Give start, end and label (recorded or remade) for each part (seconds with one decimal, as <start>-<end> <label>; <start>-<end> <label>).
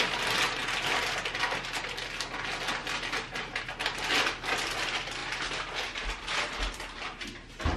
0.0-7.8 recorded